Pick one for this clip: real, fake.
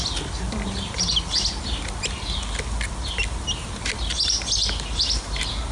real